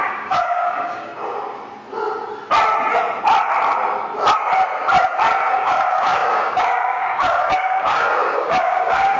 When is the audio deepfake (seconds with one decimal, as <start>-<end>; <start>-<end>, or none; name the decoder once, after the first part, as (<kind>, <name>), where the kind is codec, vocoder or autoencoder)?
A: 0.0-1.1 (codec, DAC); 5.5-9.2